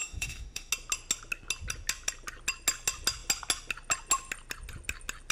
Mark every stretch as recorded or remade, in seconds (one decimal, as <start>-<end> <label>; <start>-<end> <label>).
0.0-0.7 remade; 0.7-5.3 recorded